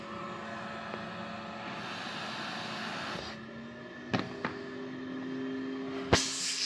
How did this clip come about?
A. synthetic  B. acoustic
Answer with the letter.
B